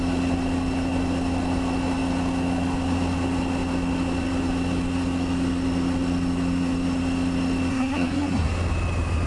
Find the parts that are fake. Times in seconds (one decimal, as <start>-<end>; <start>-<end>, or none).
7.7-8.5